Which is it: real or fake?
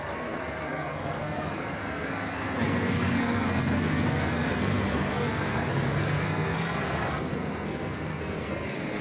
fake